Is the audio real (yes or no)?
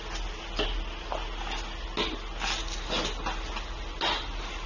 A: yes